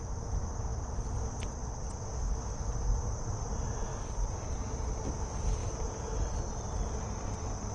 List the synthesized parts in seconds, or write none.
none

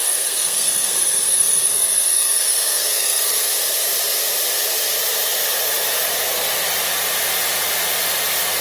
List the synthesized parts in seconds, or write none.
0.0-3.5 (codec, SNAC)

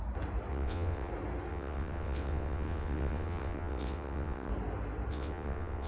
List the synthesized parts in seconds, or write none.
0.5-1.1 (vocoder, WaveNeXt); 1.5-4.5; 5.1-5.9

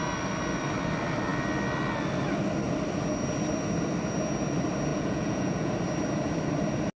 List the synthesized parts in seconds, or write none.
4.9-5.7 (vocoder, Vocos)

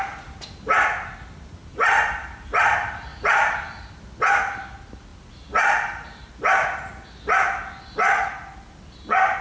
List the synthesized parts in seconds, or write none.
1.7-2.6 (vocoder, BigVGAN v2); 3.1-4.3; 5.1-7.4

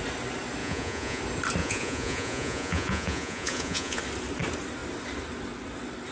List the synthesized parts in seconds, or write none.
0.6-1.2 (vocoder, Vocos); 1.6-4.0

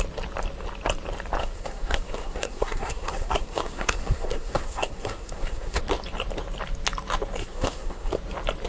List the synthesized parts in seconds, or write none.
1.4-5.8 (codec, SNAC); 7.4-8.1